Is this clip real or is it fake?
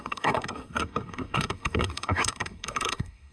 fake